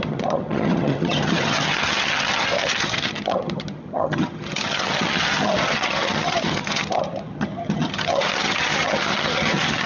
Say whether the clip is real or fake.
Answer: fake